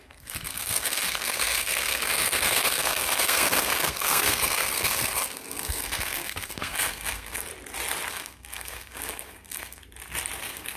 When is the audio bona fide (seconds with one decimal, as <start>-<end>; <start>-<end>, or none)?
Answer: 7.5-8.1; 9.8-10.4